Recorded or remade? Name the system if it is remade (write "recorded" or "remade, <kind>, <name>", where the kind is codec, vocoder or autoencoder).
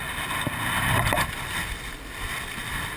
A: recorded